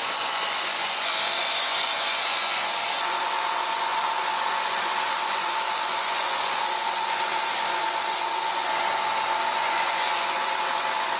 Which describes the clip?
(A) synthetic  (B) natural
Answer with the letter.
A